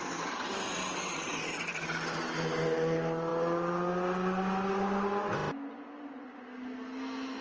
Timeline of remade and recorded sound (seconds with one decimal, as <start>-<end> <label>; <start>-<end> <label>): 0.0-7.4 recorded